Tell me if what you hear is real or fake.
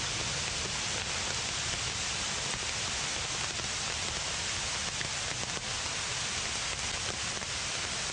real